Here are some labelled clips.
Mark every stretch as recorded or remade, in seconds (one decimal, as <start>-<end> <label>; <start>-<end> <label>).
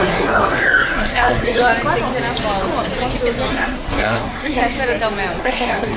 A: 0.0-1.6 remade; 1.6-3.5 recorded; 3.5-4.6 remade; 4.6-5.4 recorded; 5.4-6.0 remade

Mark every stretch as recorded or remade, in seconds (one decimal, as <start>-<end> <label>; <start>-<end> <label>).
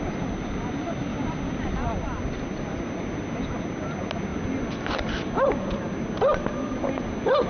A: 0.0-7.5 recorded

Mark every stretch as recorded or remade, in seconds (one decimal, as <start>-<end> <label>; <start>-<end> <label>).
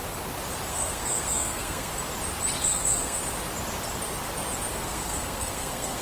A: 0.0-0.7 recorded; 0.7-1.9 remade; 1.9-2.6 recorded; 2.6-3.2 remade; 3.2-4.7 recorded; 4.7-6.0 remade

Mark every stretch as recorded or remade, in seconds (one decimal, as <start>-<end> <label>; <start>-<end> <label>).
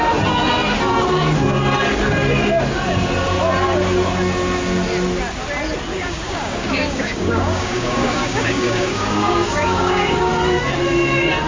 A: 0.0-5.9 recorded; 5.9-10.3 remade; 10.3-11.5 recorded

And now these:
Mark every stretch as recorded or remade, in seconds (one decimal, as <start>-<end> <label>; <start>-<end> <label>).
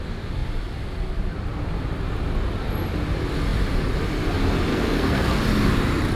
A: 0.0-4.7 recorded; 4.7-5.4 remade; 5.4-6.1 recorded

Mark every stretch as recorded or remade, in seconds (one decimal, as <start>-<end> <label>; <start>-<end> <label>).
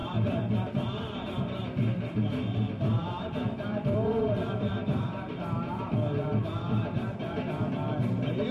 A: 0.0-0.7 remade; 0.7-2.9 recorded; 2.9-6.8 remade; 6.8-8.5 recorded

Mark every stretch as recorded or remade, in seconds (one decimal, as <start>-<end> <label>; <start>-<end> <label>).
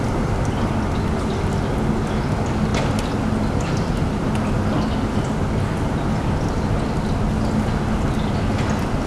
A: 0.0-9.1 recorded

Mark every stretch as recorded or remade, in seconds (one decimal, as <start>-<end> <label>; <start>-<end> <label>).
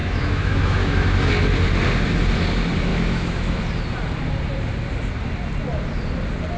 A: 0.0-1.3 remade; 1.3-2.9 recorded; 2.9-3.6 remade; 3.6-6.6 recorded